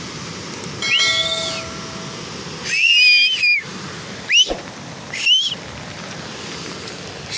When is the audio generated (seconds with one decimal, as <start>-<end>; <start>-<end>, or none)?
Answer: none